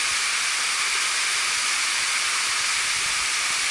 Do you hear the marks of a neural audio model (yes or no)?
no